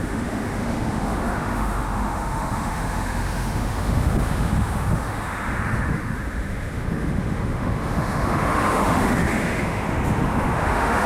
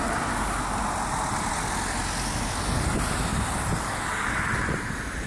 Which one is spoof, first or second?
first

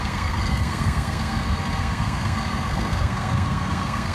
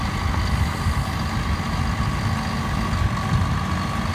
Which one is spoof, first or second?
first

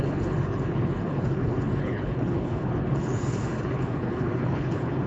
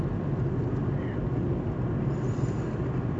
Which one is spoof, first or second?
first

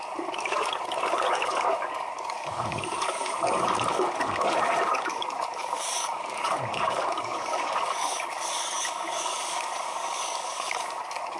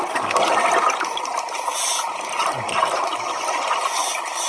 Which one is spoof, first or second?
first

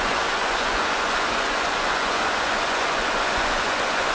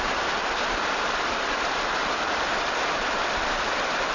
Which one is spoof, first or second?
first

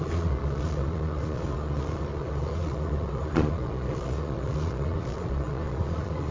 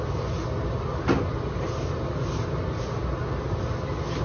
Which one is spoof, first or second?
first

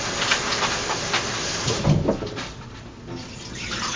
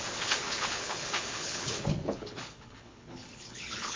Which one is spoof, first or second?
second